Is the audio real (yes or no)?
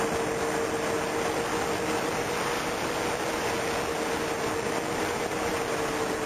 yes